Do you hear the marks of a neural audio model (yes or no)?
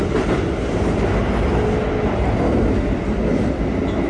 no